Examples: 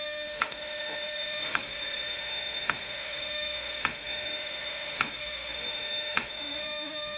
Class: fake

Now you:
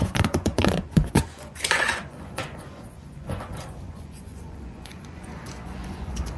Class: fake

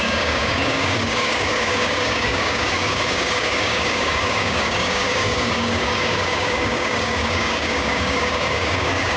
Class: fake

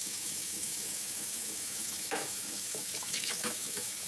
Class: fake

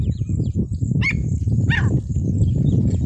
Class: fake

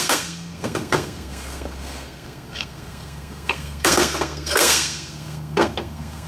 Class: fake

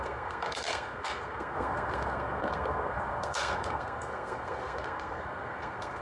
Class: fake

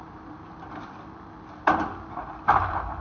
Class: real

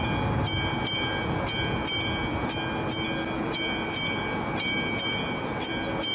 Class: real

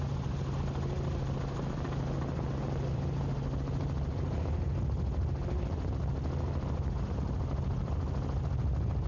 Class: real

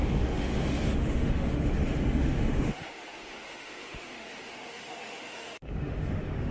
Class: fake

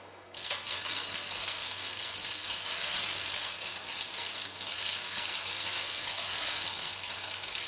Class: fake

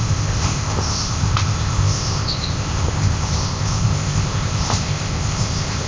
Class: fake